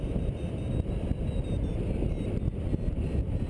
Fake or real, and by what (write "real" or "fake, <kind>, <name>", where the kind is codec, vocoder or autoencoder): fake, vocoder, BigVGAN v2